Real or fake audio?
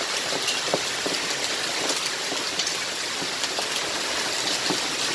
real